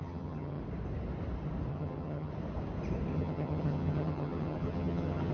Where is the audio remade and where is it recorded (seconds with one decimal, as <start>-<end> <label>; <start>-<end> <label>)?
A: 0.0-0.6 remade; 0.6-1.7 recorded; 1.7-2.3 remade; 2.3-3.1 recorded; 3.1-5.3 remade